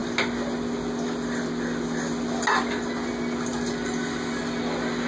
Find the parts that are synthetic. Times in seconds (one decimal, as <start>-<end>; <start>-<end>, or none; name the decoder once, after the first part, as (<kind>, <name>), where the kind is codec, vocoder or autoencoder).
none